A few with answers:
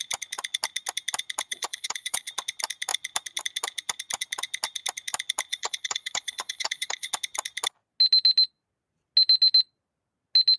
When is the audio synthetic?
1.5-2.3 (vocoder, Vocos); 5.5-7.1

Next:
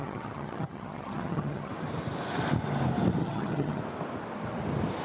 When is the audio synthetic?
0.0-1.7 (vocoder, HiFi-GAN); 3.2-3.8

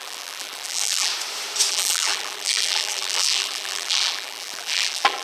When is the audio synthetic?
0.0-1.1 (vocoder, BigVGAN v2); 1.7-5.2